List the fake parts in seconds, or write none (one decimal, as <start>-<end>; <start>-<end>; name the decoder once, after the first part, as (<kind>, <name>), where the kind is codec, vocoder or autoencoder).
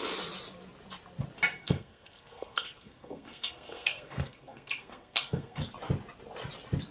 1.6-5.6 (codec, SNAC)